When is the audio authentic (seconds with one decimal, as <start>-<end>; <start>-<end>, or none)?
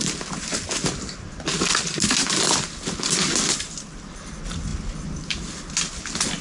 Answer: 0.0-6.4